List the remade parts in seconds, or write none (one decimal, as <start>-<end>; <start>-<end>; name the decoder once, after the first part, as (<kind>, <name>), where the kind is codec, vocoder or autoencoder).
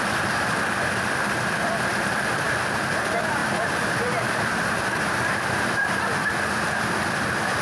3.4-6.0 (vocoder, BigVGAN v2)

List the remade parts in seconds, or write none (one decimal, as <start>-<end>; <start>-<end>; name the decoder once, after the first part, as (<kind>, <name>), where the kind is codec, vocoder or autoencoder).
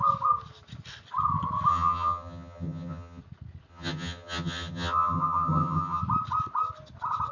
1.7-3.2 (vocoder, HiFi-GAN); 3.7-6.0